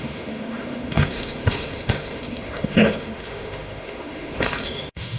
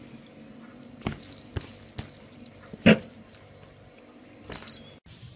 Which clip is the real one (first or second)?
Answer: second